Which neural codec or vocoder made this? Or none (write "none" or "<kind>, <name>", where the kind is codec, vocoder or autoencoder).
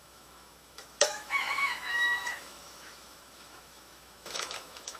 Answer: autoencoder, DAC-VAE